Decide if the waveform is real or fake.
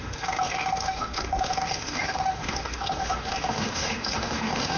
fake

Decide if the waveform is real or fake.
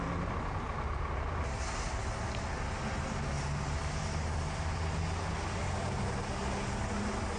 real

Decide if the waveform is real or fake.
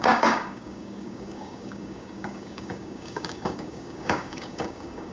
fake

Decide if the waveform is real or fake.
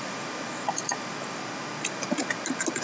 real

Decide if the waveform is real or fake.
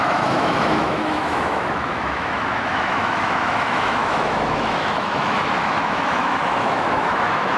fake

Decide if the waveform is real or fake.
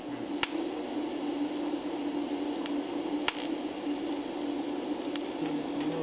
real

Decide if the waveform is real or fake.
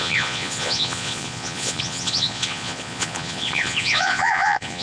fake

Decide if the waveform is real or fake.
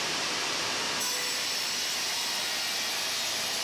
fake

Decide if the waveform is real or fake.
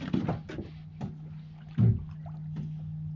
real